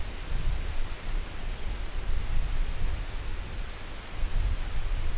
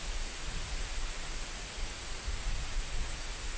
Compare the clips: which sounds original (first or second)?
first